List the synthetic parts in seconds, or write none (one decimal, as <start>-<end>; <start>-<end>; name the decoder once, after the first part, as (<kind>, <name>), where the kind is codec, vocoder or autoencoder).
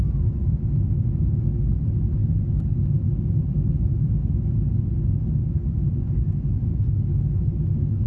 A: none